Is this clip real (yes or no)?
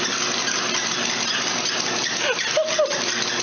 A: yes